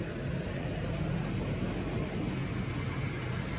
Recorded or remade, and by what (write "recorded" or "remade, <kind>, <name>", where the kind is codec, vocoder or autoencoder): recorded